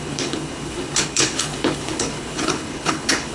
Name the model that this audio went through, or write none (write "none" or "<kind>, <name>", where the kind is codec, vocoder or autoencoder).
codec, HILCodec